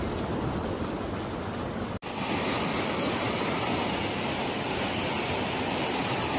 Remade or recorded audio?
recorded